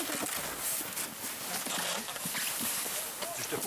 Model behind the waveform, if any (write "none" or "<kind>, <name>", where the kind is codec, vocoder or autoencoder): none